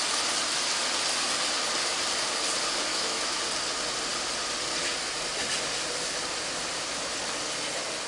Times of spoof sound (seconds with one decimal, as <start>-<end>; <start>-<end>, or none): 2.9-3.4